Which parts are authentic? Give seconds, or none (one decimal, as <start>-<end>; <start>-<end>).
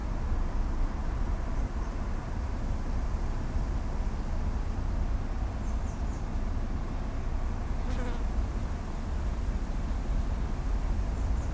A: 0.0-11.5